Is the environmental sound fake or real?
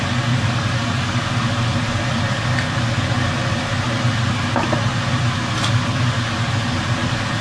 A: real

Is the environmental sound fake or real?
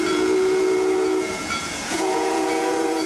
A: fake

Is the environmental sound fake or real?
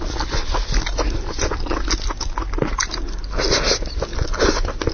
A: real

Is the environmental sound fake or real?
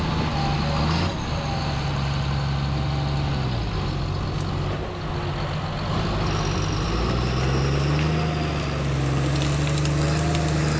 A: real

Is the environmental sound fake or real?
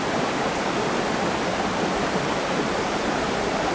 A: real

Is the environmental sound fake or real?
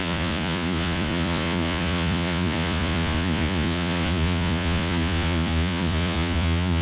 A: fake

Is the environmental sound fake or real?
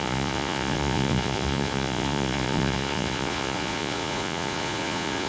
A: fake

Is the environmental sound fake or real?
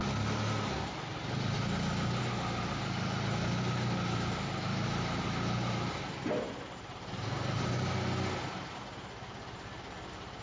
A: real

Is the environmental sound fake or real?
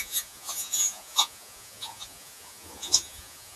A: fake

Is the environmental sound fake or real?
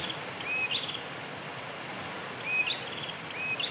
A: real